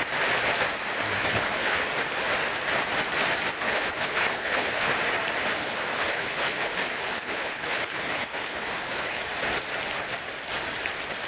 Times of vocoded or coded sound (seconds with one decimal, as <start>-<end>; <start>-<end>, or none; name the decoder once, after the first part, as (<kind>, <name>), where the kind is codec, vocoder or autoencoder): 1.2-1.9 (codec, HILCodec); 3.5-4.9; 5.6-9.2

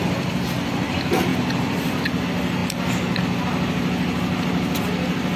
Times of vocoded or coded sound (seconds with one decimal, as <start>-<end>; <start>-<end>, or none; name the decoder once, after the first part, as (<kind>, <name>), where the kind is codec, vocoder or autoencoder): 1.3-2.0 (vocoder, BigVGAN v2)

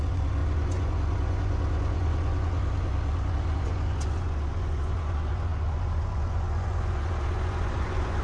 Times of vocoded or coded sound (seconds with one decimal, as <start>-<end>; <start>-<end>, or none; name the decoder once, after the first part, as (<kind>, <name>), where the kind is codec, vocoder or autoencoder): 0.0-8.2 (vocoder, Vocos)

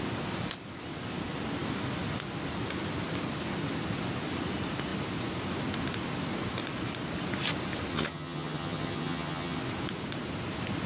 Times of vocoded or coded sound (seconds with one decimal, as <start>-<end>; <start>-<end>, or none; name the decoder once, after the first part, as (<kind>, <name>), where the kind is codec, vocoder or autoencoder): 7.9-9.6 (vocoder, HiFi-GAN)

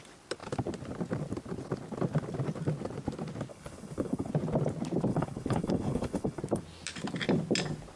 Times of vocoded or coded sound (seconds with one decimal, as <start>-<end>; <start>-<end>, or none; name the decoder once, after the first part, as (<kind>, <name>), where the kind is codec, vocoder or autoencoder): 3.5-4.3 (codec, HILCodec); 5.1-6.4